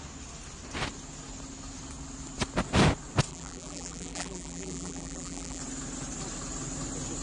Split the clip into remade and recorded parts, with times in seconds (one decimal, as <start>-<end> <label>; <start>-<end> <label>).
0.0-3.3 recorded; 3.3-5.6 remade; 5.6-7.2 recorded

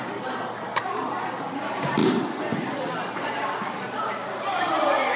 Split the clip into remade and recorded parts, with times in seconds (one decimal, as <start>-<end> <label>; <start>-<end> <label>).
0.0-4.2 recorded; 4.2-4.7 remade; 4.7-5.2 recorded

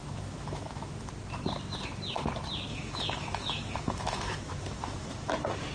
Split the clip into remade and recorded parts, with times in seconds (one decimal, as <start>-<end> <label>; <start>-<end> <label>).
0.0-1.1 remade; 1.1-2.7 recorded; 2.7-5.3 remade; 5.3-5.7 recorded

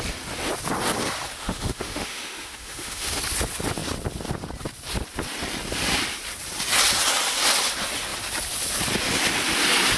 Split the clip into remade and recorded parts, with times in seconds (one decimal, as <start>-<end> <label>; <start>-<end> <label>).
0.0-1.4 recorded; 1.4-3.2 remade; 3.2-10.0 recorded